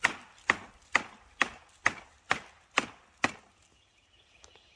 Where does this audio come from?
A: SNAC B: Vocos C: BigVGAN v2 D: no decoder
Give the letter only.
D